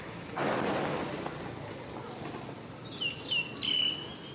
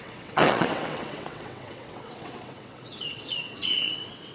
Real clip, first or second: first